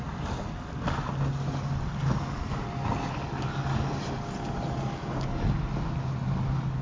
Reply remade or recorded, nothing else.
recorded